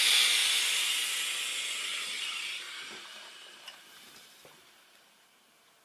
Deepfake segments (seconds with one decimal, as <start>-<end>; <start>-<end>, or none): 1.9-5.8